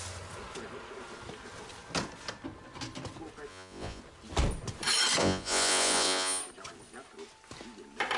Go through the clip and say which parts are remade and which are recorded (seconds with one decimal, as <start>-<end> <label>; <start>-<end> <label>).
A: 0.0-3.5 recorded; 3.5-4.0 remade; 4.0-5.2 recorded; 5.2-6.4 remade; 6.4-8.2 recorded